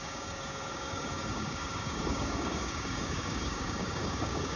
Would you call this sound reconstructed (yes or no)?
yes